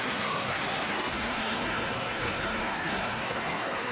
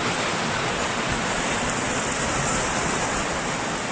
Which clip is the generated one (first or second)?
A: first